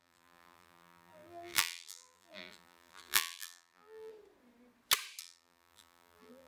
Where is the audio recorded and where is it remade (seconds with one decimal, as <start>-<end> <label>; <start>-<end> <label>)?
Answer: 0.0-4.1 remade; 4.1-5.2 recorded; 5.2-6.5 remade